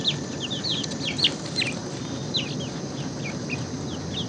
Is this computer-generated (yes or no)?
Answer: no